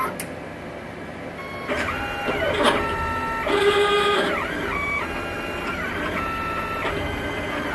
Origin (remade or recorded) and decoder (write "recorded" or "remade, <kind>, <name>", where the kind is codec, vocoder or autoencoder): recorded